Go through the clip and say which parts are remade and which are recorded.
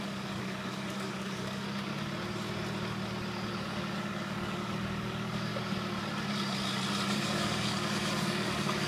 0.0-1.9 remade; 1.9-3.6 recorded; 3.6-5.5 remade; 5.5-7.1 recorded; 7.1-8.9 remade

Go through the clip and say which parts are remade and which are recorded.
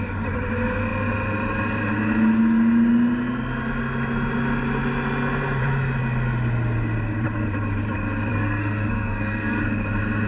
0.0-8.3 recorded; 8.3-9.6 remade; 9.6-10.3 recorded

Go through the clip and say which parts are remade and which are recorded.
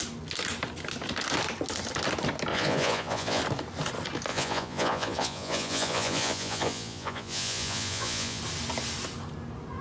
0.0-2.5 recorded; 2.5-3.4 remade; 3.4-4.3 recorded; 4.3-8.4 remade; 8.4-9.8 recorded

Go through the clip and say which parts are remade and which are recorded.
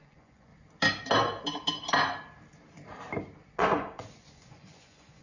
0.0-0.5 remade; 0.5-3.6 recorded; 3.6-5.2 remade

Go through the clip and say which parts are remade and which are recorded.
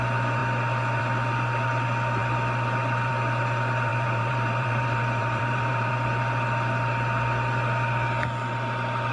0.0-3.9 recorded; 3.9-5.9 remade; 5.9-9.1 recorded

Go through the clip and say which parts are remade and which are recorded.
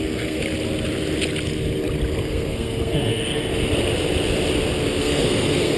0.0-0.4 remade; 0.4-2.2 recorded; 2.2-3.4 remade; 3.4-5.0 recorded; 5.0-5.8 remade